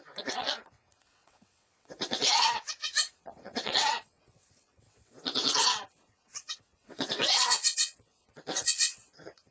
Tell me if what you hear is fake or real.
fake